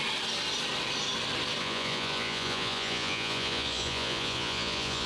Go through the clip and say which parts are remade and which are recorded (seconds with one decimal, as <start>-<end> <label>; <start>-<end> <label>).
0.0-1.6 recorded; 1.6-5.1 remade